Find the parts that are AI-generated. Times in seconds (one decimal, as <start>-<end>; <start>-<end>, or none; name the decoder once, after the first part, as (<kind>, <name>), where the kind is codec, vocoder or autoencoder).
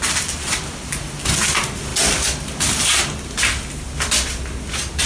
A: none